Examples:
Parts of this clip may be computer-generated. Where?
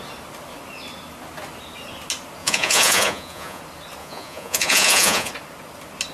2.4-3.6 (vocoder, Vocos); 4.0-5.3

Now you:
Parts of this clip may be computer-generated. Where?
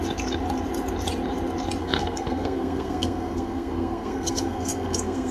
1.8-5.3 (codec, SNAC)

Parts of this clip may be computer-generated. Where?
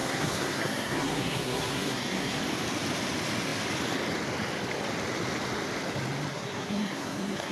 0.0-2.4 (codec, SNAC); 6.3-7.5